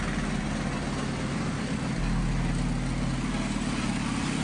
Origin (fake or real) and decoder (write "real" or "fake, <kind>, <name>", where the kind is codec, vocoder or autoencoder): real